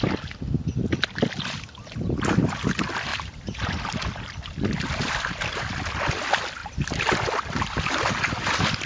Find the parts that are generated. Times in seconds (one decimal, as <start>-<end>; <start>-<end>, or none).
3.1-6.0; 6.6-8.9